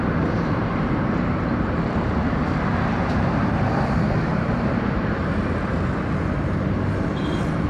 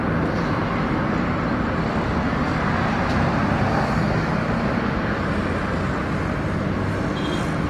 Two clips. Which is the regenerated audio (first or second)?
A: first